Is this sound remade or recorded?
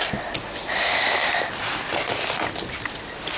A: recorded